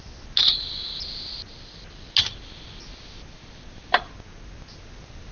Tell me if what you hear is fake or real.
real